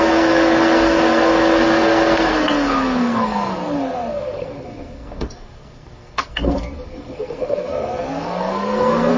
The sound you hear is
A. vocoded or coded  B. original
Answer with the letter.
A